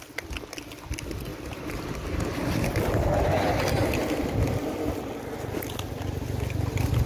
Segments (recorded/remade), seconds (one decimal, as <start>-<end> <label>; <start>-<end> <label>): 0.0-7.1 recorded